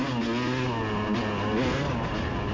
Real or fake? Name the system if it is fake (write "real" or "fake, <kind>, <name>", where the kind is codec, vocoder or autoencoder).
real